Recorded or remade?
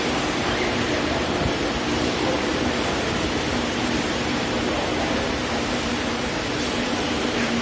remade